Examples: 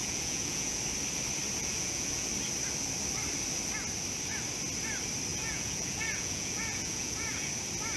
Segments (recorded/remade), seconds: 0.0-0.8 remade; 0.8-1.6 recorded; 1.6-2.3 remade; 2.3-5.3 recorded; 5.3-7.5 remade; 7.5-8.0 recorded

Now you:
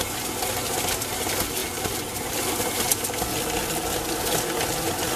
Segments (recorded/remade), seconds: 0.0-5.2 recorded

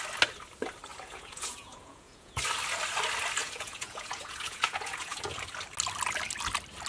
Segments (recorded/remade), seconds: 0.0-0.9 recorded; 0.9-2.4 remade; 2.4-3.4 recorded; 3.4-5.2 remade; 5.2-6.9 recorded

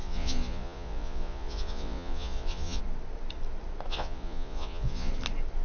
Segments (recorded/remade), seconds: 0.0-2.8 remade; 2.8-3.9 recorded; 3.9-5.1 remade; 5.1-5.6 recorded

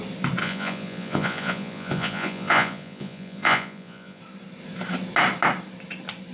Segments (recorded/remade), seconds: 0.0-0.4 recorded; 0.4-4.2 remade; 4.2-6.3 recorded

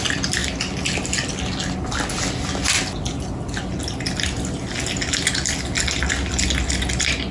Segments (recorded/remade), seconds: 0.0-7.3 recorded

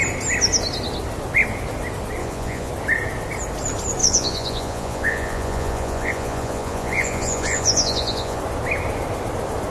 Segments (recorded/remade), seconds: 0.0-2.2 recorded; 2.2-2.7 remade; 2.7-4.0 recorded; 4.0-8.4 remade; 8.4-9.7 recorded

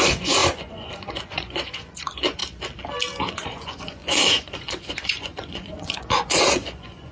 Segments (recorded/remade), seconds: 0.0-2.4 remade; 2.4-3.3 recorded; 3.3-7.1 remade